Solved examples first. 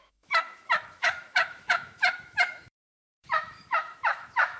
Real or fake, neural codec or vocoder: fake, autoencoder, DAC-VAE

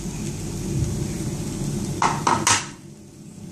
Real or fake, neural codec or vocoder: real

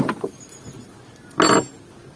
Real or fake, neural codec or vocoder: real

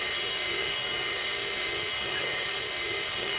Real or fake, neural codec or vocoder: fake, vocoder, HiFi-GAN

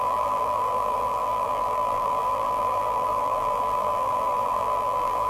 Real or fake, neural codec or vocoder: fake, vocoder, BigVGAN v2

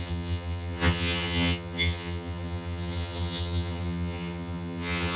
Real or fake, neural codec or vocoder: fake, vocoder, HiFi-GAN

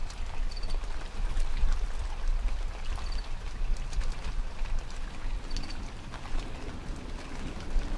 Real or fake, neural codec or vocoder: real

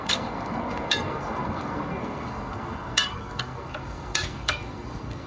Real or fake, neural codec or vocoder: fake, codec, SNAC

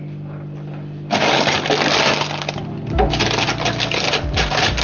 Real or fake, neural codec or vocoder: real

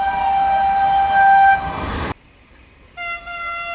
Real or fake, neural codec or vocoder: real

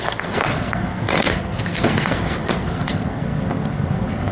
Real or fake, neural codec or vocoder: fake, codec, SNAC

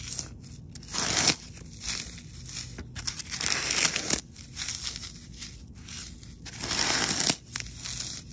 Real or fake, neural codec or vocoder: real